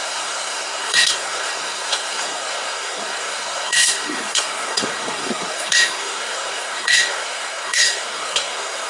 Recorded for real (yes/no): no